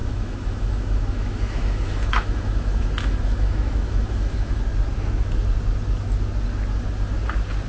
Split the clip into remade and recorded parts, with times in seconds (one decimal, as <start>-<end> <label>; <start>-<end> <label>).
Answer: 0.0-4.6 remade; 4.6-7.7 recorded